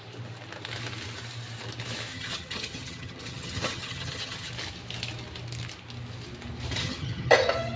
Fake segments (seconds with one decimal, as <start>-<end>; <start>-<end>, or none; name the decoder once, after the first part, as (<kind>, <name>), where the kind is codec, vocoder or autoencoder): 2.1-4.5 (vocoder, HiFi-GAN); 6.8-7.3

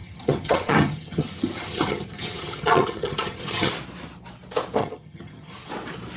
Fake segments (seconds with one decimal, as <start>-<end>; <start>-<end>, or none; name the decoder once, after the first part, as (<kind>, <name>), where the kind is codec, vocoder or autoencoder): 0.0-3.7 (vocoder, HiFi-GAN); 4.8-5.7

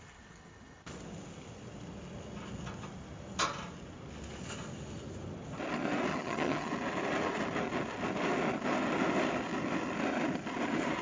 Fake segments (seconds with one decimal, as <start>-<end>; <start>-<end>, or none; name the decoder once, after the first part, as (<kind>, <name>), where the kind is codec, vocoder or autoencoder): 6.1-6.7 (vocoder, HiFi-GAN)

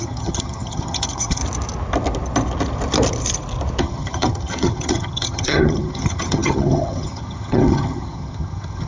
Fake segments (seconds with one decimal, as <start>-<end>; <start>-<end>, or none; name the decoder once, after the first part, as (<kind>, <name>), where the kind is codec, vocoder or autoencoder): 0.0-1.4 (vocoder, HiFi-GAN); 3.8-8.9

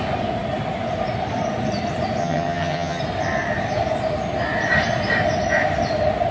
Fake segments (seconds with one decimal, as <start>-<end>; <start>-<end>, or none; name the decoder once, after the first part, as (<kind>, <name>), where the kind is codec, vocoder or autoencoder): 2.2-3.0 (vocoder, HiFi-GAN)

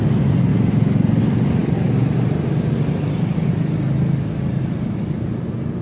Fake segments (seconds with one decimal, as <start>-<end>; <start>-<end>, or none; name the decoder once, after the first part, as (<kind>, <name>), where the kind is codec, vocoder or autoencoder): none

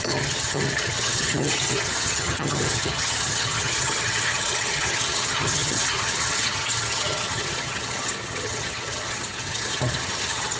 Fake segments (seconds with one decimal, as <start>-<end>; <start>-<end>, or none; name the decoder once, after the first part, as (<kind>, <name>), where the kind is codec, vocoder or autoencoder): 0.0-10.6 (vocoder, HiFi-GAN)

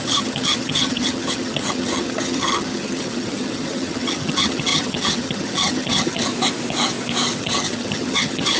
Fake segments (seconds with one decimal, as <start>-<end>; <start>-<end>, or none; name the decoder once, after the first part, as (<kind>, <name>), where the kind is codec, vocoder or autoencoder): 0.0-6.3 (vocoder, HiFi-GAN); 7.4-8.6